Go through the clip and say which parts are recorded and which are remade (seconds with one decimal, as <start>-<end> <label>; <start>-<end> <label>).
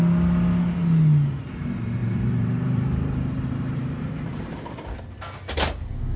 0.0-2.0 recorded; 2.0-5.0 remade; 5.0-6.2 recorded